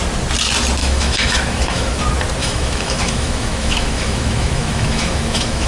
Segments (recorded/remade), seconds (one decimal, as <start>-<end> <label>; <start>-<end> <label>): 0.0-0.8 recorded; 0.8-2.0 remade; 2.0-2.4 recorded; 2.4-5.7 remade